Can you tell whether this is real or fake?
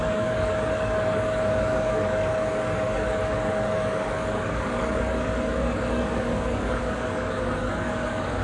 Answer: fake